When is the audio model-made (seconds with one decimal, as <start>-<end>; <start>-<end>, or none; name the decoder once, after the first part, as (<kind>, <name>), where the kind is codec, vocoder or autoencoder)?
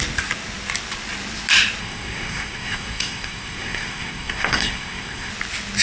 1.8-5.3 (codec, SNAC)